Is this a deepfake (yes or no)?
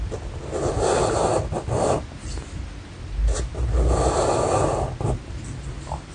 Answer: no